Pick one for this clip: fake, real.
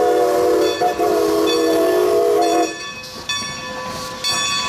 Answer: real